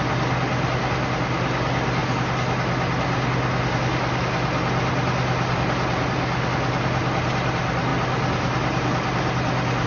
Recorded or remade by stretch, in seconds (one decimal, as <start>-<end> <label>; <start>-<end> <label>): 0.0-9.9 recorded